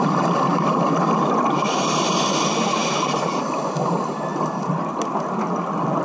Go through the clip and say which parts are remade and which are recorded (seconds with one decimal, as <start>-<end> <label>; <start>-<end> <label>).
0.0-6.0 recorded